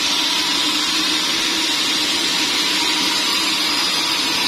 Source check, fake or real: real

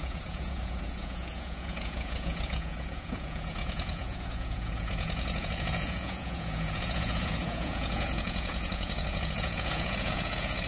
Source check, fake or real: fake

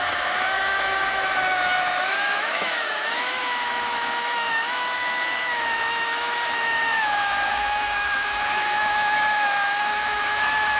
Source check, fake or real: fake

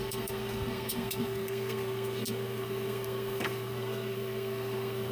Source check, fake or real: fake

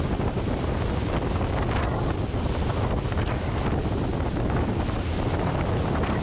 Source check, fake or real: real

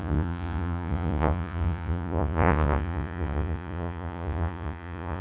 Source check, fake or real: fake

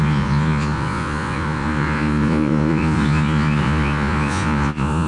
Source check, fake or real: fake